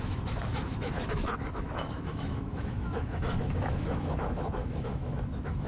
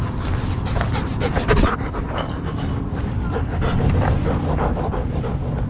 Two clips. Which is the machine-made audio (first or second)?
first